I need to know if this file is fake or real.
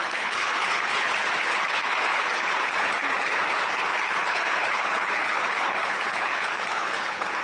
fake